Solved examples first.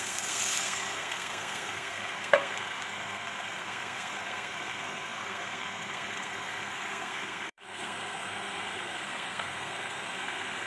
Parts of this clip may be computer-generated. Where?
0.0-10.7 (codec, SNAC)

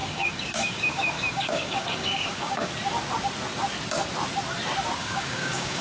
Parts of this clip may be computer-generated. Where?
0.0-2.7 (codec, DAC); 5.0-5.8

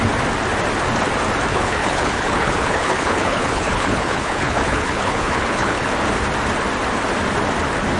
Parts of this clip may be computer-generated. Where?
1.5-5.9 (codec, HILCodec)

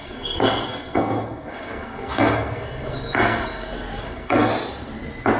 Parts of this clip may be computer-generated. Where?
0.0-4.5 (codec, SNAC)